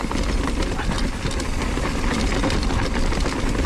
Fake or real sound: real